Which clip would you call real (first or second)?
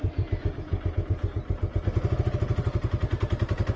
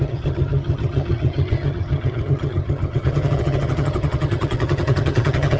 first